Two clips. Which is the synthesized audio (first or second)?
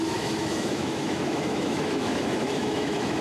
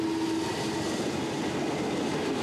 first